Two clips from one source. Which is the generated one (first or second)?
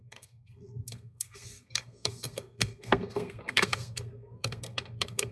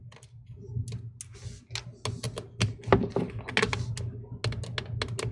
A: first